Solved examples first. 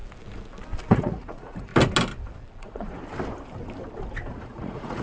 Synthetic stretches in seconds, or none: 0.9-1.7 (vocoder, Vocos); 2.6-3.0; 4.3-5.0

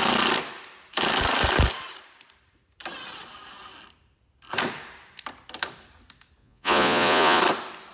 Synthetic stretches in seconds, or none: 6.4-7.4 (vocoder, Vocos)

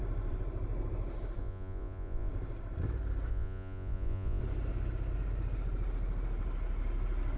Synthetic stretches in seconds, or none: 1.4-2.3 (vocoder, Vocos); 3.3-4.4

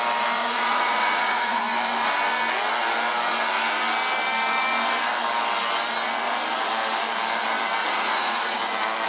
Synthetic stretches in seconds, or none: 0.4-1.6 (vocoder, Vocos); 7.8-8.5

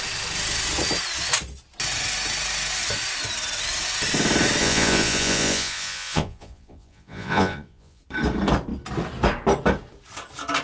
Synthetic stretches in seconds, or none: 4.6-8.0 (vocoder, Vocos)

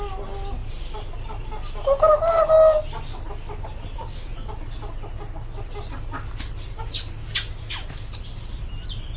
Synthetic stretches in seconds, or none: none

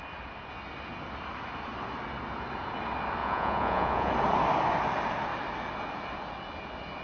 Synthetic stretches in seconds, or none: 3.2-4.1 (vocoder, Vocos)

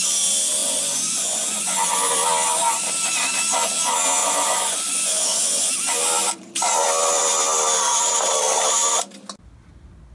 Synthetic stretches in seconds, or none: 0.6-2.1 (vocoder, Vocos); 4.2-5.7